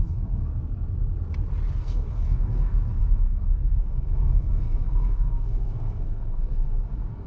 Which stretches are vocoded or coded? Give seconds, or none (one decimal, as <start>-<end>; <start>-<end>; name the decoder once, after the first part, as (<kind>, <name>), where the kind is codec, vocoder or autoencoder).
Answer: 0.0-0.5 (codec, SNAC); 1.8-7.3